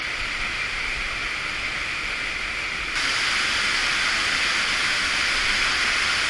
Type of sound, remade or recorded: recorded